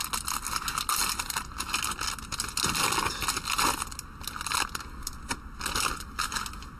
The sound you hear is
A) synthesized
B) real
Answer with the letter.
B